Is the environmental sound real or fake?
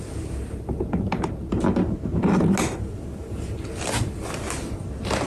real